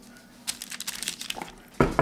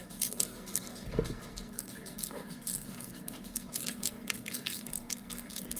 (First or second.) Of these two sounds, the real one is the first